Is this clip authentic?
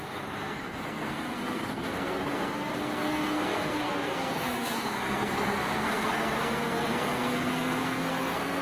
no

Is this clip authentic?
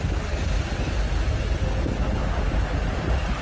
yes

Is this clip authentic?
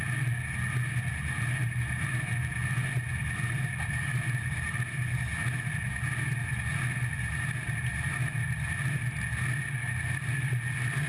yes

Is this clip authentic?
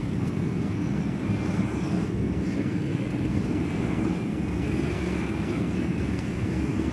no